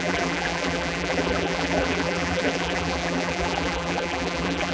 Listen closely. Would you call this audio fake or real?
fake